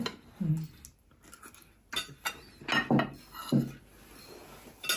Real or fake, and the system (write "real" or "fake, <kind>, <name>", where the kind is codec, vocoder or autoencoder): real